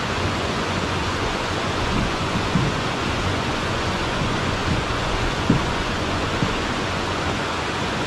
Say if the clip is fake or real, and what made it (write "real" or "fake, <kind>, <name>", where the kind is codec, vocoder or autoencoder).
fake, vocoder, Vocos